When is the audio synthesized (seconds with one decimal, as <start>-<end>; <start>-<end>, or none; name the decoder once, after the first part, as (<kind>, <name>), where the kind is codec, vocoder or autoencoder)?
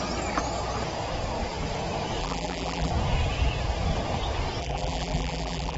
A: 2.2-2.9 (vocoder, BigVGAN v2); 4.6-5.8